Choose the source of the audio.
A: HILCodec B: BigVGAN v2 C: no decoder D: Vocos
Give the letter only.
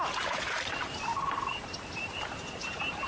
B